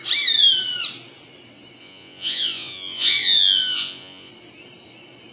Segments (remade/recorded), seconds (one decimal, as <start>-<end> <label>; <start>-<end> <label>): 0.0-1.8 recorded; 1.8-4.3 remade; 4.3-5.3 recorded